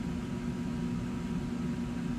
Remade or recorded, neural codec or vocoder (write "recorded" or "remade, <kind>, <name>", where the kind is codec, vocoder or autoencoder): recorded